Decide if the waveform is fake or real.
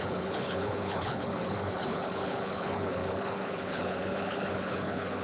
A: fake